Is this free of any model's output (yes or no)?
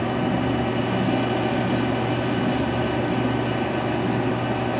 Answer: yes